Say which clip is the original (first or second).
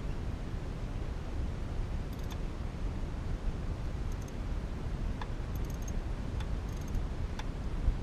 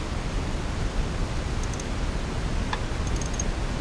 second